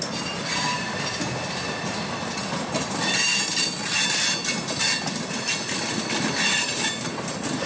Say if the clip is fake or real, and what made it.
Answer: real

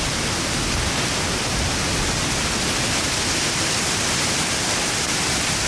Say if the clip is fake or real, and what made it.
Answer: real